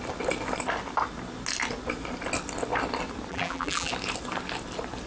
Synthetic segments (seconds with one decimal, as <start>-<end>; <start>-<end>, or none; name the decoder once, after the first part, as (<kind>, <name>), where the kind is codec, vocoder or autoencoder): 3.3-3.9 (vocoder, BigVGAN v2)